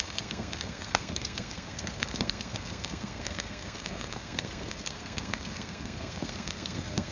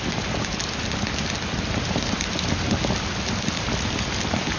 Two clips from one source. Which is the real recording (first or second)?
second